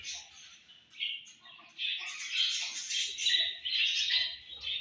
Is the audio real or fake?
real